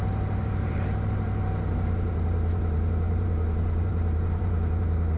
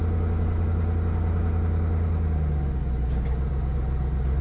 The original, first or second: second